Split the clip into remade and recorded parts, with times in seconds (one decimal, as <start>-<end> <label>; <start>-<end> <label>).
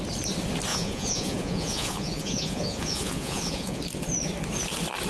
0.0-0.7 recorded; 0.7-3.8 remade; 3.8-5.1 recorded